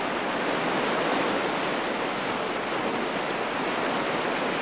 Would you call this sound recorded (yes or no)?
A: yes